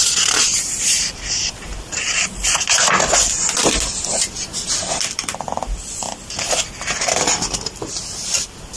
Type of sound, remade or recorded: recorded